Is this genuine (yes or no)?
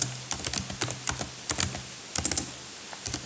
yes